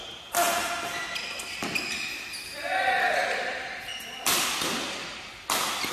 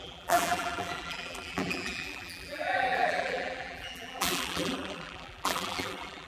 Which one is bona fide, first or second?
first